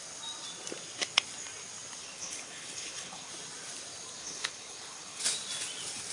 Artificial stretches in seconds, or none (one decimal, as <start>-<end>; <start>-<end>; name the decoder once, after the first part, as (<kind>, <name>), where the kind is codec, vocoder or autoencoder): 2.0-3.3 (codec, HILCodec); 4.2-5.2